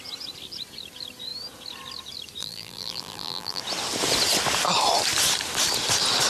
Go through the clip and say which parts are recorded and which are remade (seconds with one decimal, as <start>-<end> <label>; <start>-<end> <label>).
0.0-2.4 recorded; 2.4-3.6 remade; 3.6-6.3 recorded

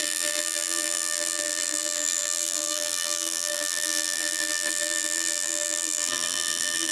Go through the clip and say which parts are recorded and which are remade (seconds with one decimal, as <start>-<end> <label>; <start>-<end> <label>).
0.0-6.9 remade

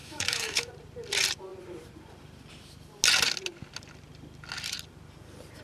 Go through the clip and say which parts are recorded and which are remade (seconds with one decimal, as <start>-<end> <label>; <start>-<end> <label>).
0.0-0.7 remade; 0.7-5.6 recorded

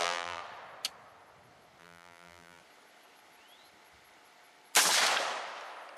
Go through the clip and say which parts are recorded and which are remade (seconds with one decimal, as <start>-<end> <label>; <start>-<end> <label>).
0.0-0.4 remade; 0.4-1.8 recorded; 1.8-2.6 remade; 2.6-6.0 recorded

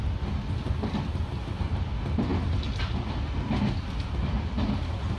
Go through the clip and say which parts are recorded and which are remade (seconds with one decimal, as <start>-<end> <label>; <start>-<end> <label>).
0.0-5.2 recorded

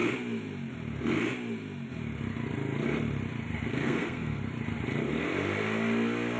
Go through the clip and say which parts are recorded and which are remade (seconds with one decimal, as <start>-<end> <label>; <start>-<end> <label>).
0.0-3.7 recorded; 3.7-4.4 remade; 4.4-6.4 recorded

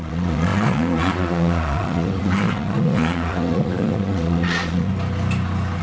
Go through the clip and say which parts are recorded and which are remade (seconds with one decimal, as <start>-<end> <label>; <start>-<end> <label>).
0.0-4.9 remade; 4.9-5.8 recorded